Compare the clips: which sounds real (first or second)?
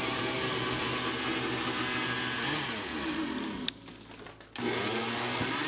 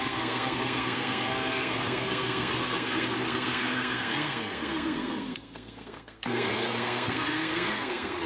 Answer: first